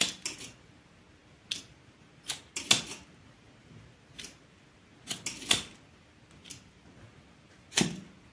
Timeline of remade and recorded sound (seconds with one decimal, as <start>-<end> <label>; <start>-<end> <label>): 0.0-8.3 recorded